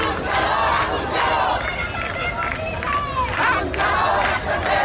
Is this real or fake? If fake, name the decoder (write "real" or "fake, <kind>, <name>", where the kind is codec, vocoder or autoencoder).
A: real